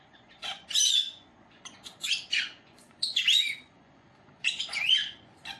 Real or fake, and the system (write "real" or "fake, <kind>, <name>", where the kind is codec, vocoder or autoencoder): fake, vocoder, Vocos